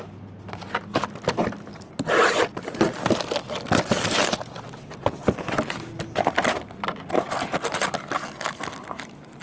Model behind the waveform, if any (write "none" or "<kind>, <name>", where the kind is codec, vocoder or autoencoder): none